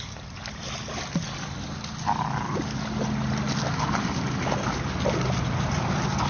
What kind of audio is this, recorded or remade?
recorded